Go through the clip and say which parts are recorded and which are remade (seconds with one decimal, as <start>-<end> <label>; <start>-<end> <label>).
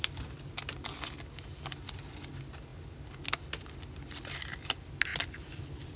0.0-5.1 recorded; 5.1-6.0 remade